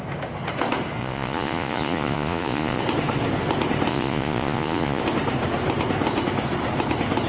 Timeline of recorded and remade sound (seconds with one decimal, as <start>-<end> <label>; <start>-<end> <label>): 0.0-1.0 recorded; 1.0-2.8 remade; 2.8-3.9 recorded; 3.9-5.0 remade; 5.0-7.3 recorded